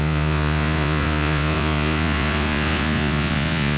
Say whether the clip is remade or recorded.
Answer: remade